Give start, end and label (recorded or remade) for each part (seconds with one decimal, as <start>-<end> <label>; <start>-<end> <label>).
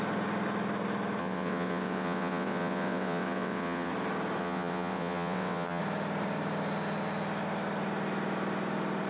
0.0-1.2 recorded; 1.2-3.9 remade; 3.9-4.4 recorded; 4.4-5.8 remade; 5.8-9.1 recorded